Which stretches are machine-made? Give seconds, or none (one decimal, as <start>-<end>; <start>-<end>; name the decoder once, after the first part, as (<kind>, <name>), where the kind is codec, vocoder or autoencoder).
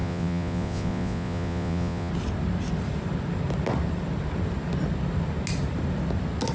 0.0-2.1 (vocoder, Vocos)